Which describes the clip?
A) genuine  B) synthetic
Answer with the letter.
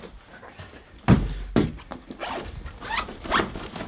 A